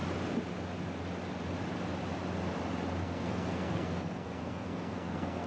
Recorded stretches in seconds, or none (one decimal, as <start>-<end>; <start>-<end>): 0.0-3.0